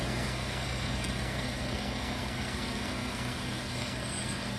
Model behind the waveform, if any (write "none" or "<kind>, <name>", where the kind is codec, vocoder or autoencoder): codec, SNAC